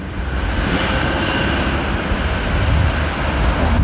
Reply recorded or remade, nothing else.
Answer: recorded